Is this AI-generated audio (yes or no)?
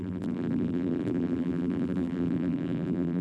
yes